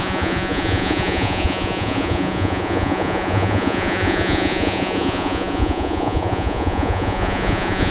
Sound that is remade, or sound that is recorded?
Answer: remade